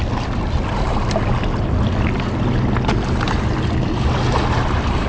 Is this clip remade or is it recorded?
recorded